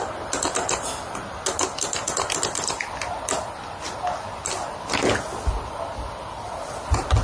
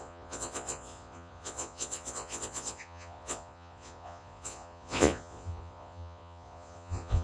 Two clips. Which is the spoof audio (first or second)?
second